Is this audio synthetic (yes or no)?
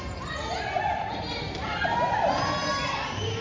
no